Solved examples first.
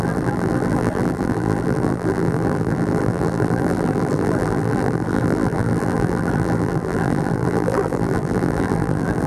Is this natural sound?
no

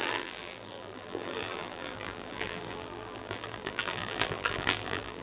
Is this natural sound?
no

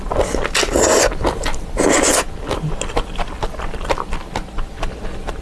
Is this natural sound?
yes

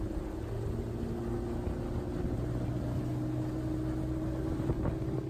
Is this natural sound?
yes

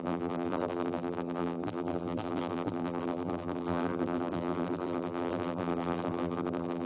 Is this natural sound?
no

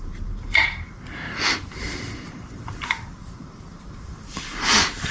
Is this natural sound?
no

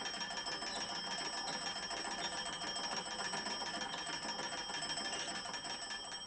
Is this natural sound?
yes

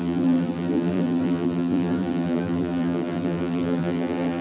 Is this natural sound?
no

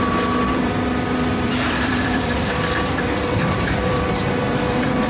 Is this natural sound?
no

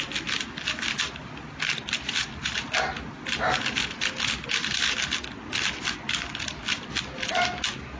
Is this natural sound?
yes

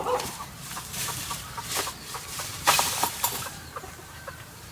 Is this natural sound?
no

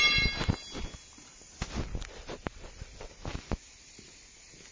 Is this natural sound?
yes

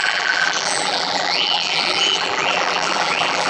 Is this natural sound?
no